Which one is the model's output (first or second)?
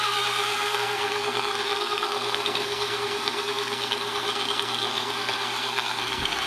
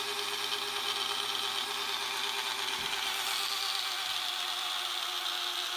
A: first